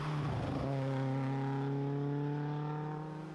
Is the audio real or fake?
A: real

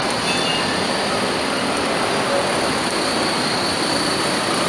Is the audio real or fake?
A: real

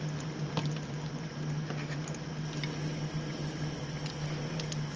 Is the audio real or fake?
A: real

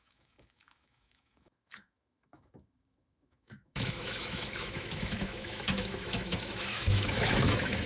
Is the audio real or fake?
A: fake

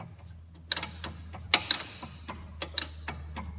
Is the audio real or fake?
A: real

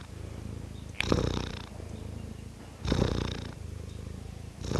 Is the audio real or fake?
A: fake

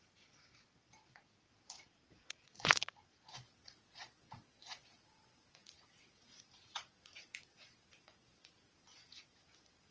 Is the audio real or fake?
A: fake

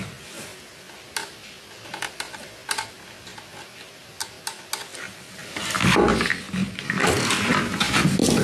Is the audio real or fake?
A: real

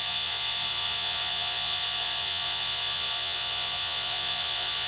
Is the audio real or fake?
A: fake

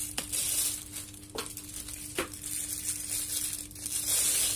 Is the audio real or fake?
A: real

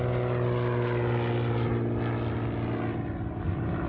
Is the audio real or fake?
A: real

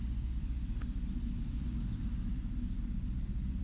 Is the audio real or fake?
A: real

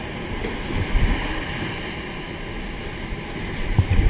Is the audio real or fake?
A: real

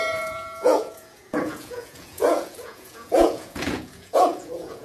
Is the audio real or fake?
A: fake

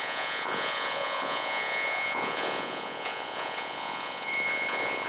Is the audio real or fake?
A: fake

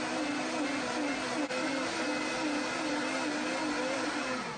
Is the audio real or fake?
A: real